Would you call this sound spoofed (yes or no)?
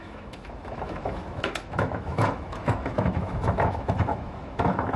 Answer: yes